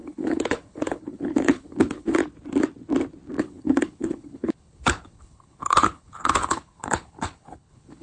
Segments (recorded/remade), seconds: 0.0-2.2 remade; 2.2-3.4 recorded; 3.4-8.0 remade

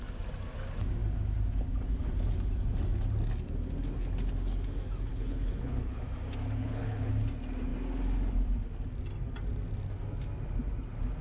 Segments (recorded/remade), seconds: 0.0-5.1 recorded; 5.1-6.0 remade; 6.0-6.6 recorded; 6.6-7.1 remade; 7.1-11.2 recorded

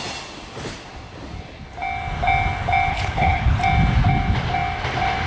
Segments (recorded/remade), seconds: 0.0-2.9 recorded; 2.9-3.6 remade; 3.6-5.3 recorded

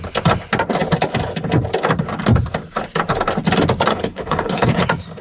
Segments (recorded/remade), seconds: 0.0-3.9 recorded; 3.9-4.8 remade; 4.8-5.2 recorded

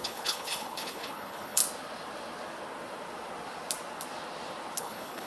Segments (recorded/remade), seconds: 0.0-1.6 remade; 1.6-4.8 recorded; 4.8-5.3 remade

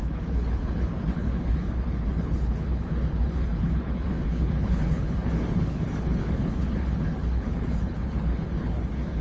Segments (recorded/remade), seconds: 0.0-9.2 remade